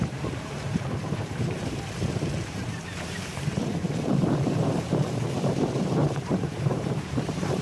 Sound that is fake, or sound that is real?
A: fake